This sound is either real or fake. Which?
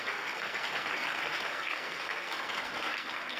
fake